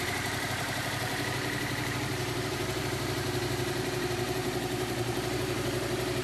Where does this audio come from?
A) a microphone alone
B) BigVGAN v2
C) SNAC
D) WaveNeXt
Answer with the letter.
B